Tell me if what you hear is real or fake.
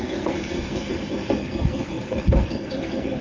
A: fake